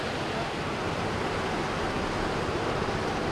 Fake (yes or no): no